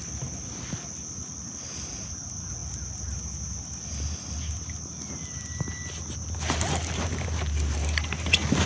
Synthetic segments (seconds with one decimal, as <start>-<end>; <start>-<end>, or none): none